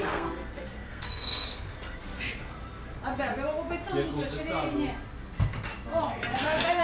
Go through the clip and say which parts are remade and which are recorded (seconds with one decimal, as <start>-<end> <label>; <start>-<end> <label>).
0.0-2.0 remade; 2.0-6.0 recorded; 6.0-6.8 remade